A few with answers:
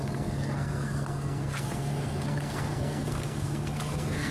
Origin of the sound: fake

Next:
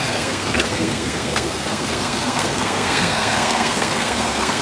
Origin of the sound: fake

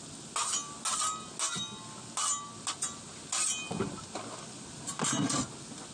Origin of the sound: real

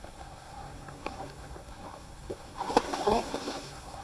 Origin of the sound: fake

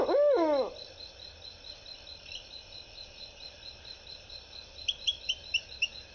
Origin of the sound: real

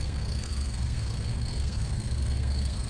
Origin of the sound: fake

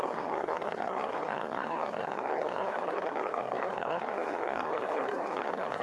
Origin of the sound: fake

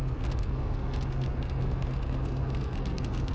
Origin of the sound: fake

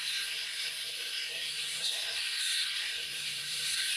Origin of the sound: fake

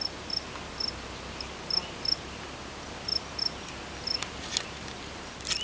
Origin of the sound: real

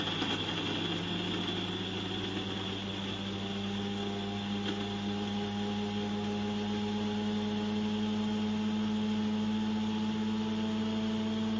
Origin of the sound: real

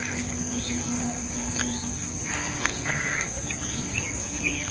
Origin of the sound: fake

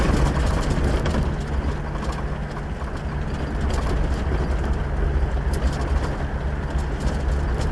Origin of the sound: real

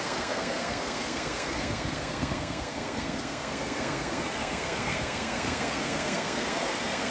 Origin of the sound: fake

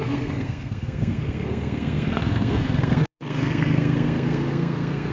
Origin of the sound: fake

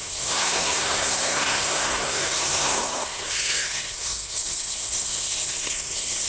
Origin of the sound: fake